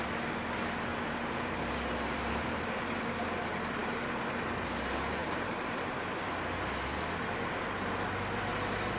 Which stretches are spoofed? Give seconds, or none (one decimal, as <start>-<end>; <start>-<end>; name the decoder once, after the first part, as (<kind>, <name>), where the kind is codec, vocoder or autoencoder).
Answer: 0.9-2.6 (vocoder, BigVGAN v2); 5.2-5.9